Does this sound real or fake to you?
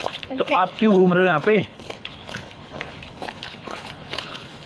fake